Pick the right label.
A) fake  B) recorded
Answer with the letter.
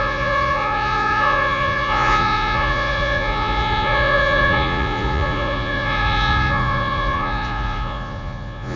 A